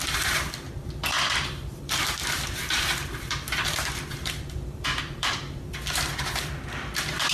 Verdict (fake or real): fake